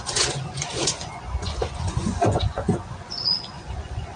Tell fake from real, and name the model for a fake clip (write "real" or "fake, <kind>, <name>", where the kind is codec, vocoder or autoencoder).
fake, vocoder, Vocos